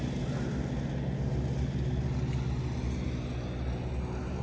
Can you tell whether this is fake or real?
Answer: real